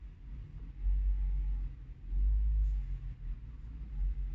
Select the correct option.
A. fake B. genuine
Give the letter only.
B